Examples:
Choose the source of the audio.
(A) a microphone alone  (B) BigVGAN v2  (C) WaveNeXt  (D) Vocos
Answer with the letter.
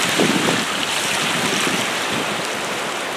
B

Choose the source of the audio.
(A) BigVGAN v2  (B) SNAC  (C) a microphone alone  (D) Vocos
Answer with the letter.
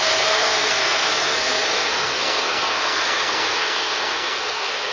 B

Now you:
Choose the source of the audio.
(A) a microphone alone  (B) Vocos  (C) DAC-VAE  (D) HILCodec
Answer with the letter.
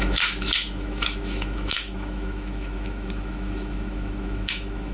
C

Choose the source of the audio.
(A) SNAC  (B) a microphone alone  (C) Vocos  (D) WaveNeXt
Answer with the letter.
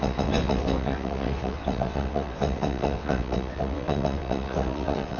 D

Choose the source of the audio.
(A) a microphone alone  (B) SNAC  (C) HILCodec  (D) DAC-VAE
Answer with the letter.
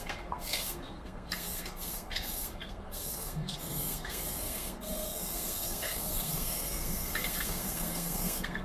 B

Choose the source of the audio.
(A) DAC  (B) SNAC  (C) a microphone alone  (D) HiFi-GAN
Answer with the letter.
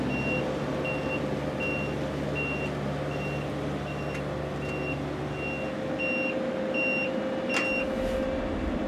C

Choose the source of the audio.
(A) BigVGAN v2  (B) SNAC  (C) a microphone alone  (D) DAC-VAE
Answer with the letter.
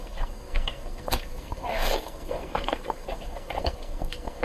B